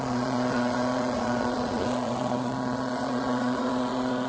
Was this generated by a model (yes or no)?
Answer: yes